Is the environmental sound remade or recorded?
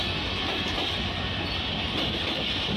recorded